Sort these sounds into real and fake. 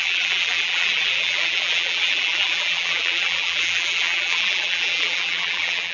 fake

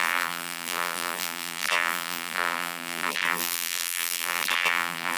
fake